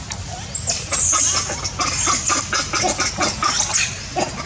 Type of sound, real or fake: real